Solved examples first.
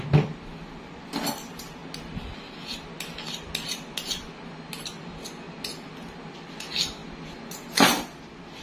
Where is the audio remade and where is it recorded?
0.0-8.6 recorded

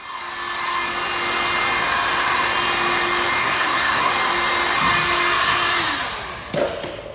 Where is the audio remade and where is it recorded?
0.0-3.4 recorded; 3.4-4.1 remade; 4.1-7.1 recorded

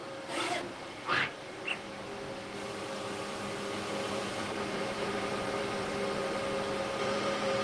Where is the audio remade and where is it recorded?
0.0-2.1 remade; 2.1-4.2 recorded; 4.2-6.2 remade; 6.2-7.0 recorded; 7.0-7.6 remade

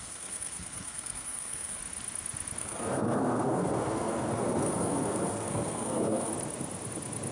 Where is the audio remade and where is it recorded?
0.0-1.8 remade; 1.8-2.6 recorded; 2.6-6.3 remade; 6.3-7.3 recorded

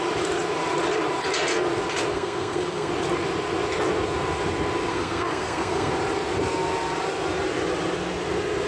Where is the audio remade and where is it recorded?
0.0-2.1 recorded; 2.1-2.9 remade; 2.9-4.9 recorded; 4.9-5.9 remade; 5.9-8.7 recorded